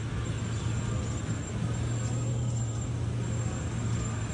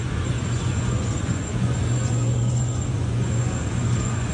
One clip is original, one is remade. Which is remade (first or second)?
second